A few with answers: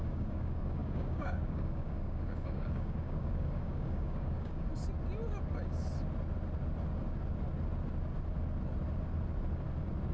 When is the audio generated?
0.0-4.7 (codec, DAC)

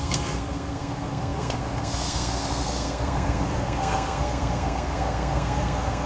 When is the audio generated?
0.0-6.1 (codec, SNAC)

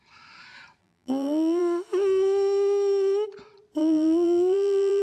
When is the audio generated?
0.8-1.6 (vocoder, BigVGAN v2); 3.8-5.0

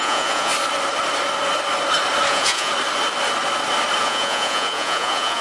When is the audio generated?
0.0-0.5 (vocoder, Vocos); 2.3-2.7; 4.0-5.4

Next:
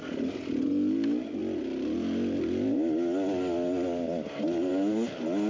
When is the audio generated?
none